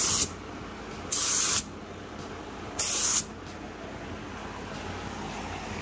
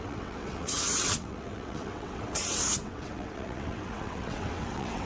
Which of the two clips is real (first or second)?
first